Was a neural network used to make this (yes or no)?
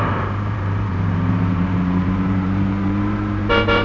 yes